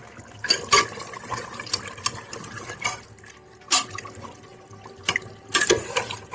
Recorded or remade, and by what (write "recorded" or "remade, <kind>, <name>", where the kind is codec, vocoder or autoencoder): recorded